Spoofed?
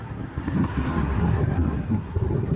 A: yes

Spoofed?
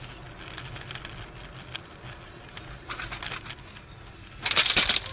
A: no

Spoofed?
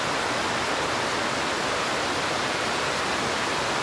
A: no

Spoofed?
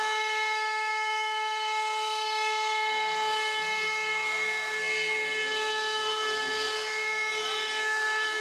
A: yes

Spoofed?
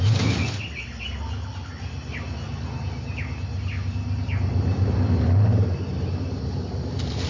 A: no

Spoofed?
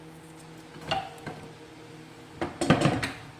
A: no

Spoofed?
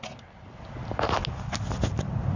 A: no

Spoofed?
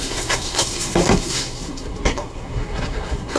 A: yes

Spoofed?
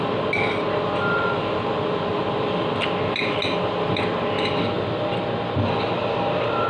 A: no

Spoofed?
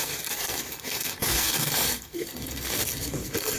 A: yes